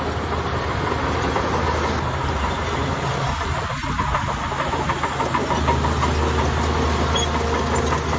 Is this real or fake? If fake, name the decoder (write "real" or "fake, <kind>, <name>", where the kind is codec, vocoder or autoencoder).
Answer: real